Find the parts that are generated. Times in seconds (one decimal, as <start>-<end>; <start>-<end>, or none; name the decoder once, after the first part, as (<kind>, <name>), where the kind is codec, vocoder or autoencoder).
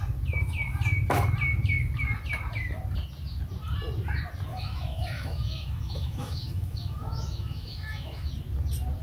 4.5-8.3 (autoencoder, DAC-VAE)